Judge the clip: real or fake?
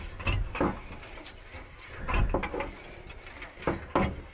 real